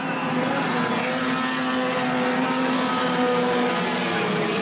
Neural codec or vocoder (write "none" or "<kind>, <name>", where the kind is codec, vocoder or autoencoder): none